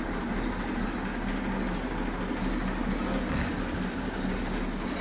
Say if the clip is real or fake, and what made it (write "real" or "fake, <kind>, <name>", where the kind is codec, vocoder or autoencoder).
real